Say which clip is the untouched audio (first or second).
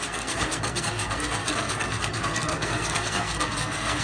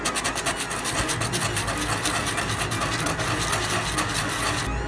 second